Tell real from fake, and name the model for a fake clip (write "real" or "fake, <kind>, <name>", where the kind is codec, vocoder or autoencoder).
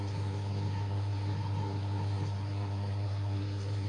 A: fake, codec, SNAC